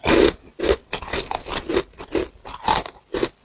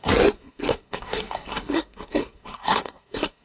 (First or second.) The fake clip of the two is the second